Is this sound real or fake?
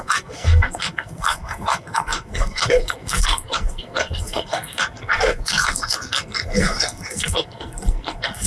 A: fake